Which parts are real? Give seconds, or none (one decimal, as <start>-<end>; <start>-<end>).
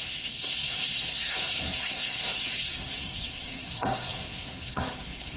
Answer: none